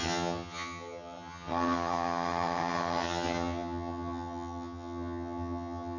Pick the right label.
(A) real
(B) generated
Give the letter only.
B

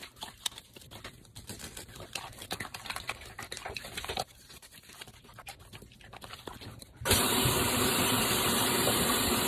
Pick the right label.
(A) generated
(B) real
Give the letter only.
A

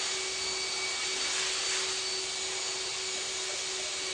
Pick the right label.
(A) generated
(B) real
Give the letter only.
B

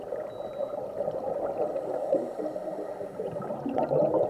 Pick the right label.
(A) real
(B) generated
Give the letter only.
A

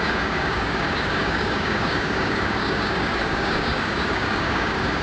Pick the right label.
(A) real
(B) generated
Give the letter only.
B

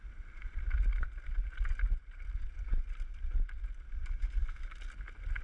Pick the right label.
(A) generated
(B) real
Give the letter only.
B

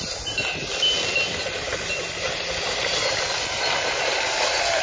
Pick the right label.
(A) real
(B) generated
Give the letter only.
A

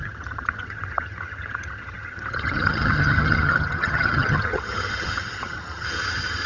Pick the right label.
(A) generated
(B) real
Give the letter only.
A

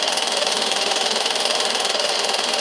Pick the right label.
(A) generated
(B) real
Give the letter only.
A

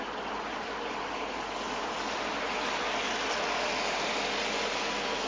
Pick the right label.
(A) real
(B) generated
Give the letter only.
A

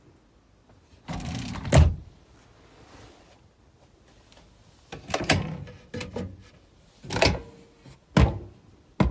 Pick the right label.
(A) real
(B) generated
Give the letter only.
A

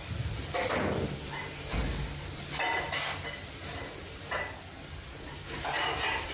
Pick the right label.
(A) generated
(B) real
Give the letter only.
B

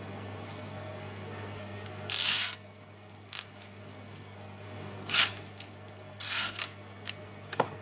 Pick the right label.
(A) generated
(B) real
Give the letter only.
A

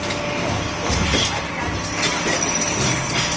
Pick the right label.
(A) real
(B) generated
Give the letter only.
A